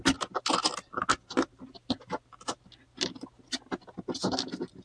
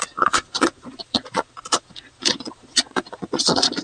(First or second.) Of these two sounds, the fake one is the second